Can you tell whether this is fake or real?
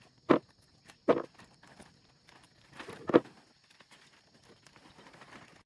real